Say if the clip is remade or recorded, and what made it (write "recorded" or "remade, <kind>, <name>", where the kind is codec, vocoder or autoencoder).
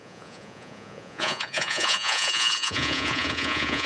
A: remade, vocoder, Vocos